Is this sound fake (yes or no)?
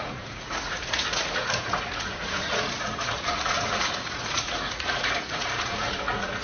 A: yes